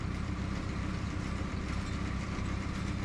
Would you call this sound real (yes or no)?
yes